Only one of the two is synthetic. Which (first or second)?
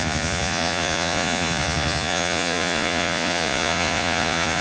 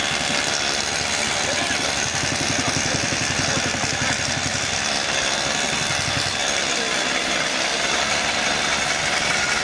first